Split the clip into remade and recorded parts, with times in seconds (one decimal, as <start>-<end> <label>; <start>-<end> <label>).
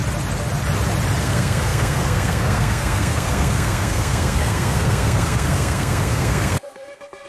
0.0-1.2 recorded; 1.2-7.3 remade